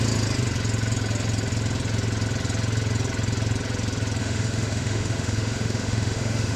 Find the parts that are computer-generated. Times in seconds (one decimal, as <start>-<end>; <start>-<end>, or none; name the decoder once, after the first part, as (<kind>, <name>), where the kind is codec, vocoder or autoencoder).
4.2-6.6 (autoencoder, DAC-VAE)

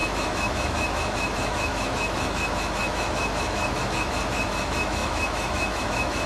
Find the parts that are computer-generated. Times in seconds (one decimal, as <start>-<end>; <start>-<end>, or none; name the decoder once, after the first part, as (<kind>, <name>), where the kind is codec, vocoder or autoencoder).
0.0-6.3 (autoencoder, DAC-VAE)

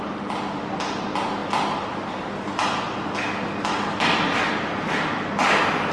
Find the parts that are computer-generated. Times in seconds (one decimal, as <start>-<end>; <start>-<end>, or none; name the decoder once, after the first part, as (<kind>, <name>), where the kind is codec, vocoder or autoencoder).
none